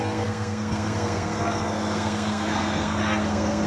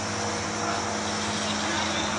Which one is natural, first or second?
second